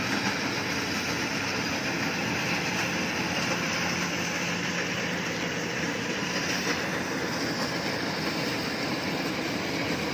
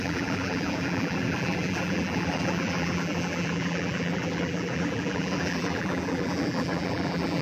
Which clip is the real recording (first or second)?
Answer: first